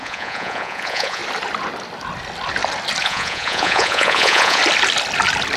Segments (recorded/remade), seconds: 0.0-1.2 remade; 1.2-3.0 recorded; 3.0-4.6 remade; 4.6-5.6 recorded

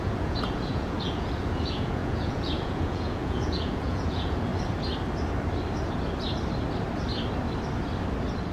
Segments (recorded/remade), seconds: 0.0-4.5 remade; 4.5-8.5 recorded

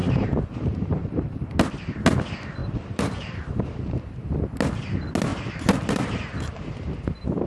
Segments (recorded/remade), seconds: 0.0-1.7 remade; 1.7-2.6 recorded; 2.6-4.0 remade; 4.0-5.3 recorded; 5.3-6.9 remade; 6.9-7.5 recorded